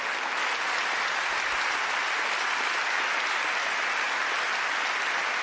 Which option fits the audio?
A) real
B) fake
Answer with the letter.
A